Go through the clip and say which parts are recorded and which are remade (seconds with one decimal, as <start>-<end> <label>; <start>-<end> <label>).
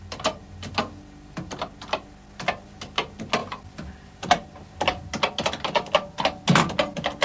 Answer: 0.0-3.4 recorded; 3.4-4.6 remade; 4.6-7.2 recorded